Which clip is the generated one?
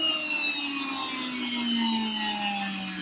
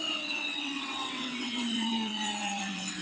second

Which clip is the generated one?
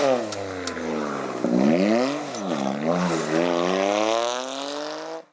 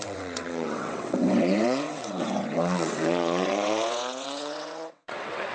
second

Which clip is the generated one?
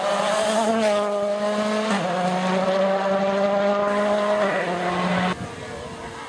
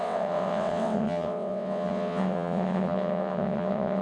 second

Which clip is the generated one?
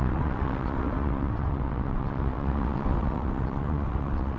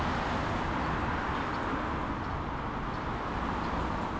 first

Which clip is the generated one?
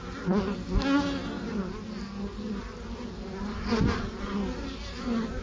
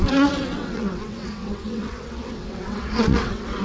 second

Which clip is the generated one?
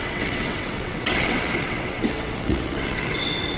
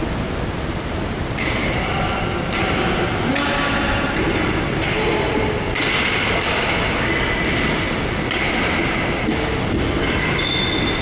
first